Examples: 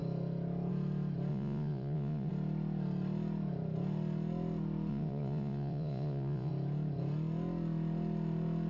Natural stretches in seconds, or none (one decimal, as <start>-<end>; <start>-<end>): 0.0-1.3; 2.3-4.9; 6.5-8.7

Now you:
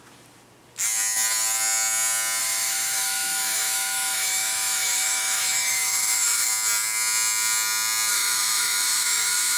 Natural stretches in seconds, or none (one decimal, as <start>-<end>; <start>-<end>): 0.0-2.4; 6.5-8.1

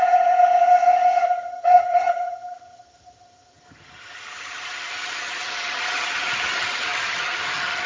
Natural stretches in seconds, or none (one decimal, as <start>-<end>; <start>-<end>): none